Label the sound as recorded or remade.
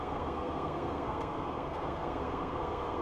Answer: remade